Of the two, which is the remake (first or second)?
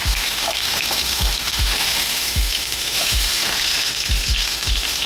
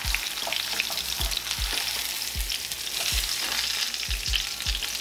first